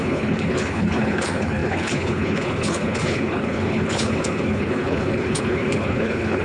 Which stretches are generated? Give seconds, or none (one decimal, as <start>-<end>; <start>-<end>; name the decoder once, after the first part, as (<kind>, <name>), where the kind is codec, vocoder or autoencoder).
0.0-6.4 (codec, HILCodec)